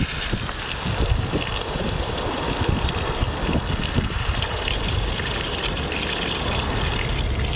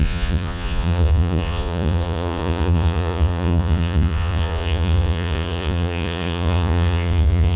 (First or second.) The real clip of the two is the first